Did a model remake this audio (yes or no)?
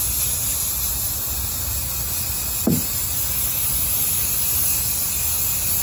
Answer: no